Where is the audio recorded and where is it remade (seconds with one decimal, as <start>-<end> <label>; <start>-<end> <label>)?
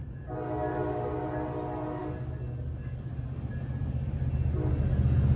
0.0-5.4 recorded